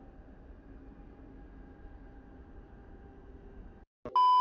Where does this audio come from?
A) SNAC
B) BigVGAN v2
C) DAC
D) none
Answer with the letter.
D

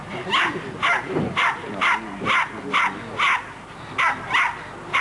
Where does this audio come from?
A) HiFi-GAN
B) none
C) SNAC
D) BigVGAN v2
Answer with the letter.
B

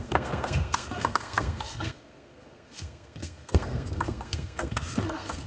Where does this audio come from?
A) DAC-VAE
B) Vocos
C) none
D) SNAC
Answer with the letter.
D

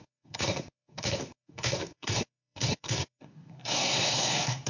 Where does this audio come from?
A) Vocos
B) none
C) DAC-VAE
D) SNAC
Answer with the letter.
D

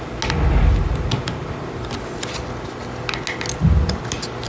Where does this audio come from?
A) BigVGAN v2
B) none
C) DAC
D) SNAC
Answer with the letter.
B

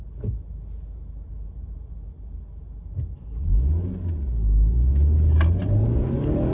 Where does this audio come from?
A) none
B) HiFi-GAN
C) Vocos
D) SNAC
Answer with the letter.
A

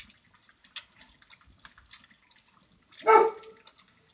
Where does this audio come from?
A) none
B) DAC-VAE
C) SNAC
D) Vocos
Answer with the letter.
A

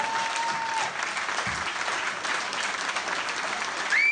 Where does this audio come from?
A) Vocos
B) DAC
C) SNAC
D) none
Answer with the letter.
D